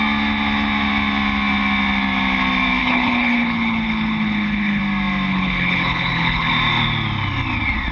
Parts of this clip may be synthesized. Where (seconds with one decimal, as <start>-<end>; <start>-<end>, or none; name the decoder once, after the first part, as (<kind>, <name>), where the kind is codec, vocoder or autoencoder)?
2.8-4.8 (codec, HILCodec); 5.3-6.5